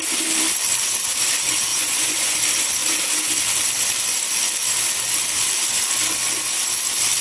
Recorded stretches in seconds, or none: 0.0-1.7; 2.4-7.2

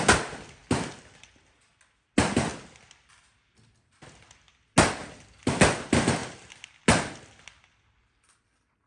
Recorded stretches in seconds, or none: 0.0-8.9

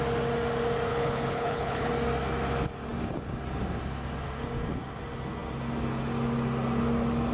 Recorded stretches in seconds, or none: 0.0-0.9; 1.9-7.3

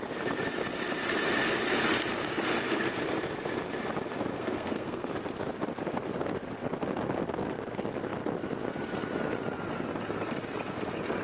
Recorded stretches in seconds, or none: 0.0-4.3; 5.1-11.2

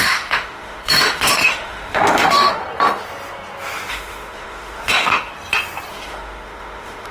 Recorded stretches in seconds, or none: 2.6-3.9; 5.3-5.9

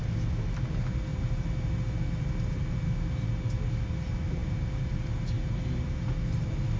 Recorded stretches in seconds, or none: 0.0-6.8

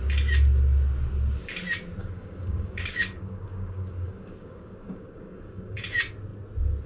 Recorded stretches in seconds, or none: 0.0-2.0; 5.8-6.9

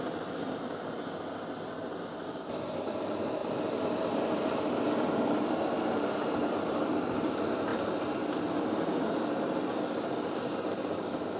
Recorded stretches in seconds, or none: 0.0-11.4